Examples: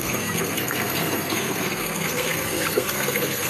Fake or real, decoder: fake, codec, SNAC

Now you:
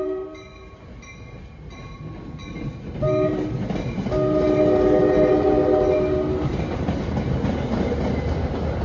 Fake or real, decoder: real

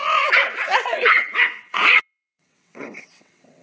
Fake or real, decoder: fake, vocoder, WaveNeXt